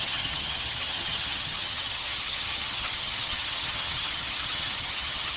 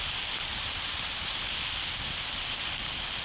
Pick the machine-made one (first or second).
first